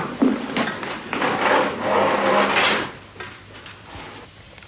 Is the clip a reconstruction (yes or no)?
no